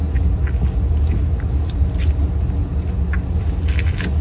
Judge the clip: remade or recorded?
recorded